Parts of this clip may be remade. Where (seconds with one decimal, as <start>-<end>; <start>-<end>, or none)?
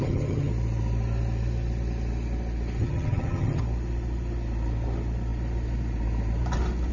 0.0-0.5; 2.8-3.6